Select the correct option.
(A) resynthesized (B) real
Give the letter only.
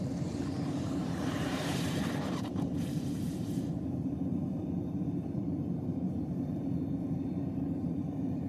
A